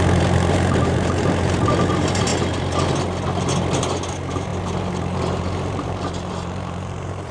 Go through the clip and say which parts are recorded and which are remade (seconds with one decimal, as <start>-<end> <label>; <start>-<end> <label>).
0.0-2.3 remade; 2.3-4.1 recorded; 4.1-7.3 remade